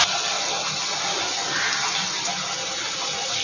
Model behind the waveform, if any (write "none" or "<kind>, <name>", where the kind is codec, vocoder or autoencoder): none